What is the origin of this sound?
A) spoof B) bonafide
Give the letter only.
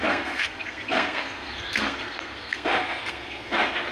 A